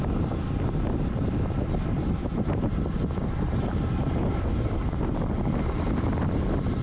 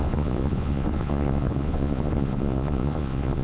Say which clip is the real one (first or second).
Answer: first